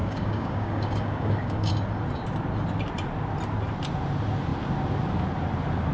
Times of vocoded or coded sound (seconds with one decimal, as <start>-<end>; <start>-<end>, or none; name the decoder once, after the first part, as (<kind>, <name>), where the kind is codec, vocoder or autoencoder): 0.0-1.7 (codec, DAC)